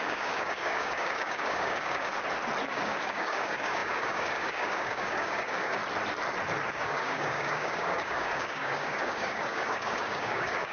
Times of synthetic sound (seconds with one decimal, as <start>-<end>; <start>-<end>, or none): 0.0-2.1; 2.7-5.8; 6.7-10.7